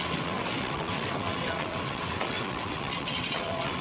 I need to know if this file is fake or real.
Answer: fake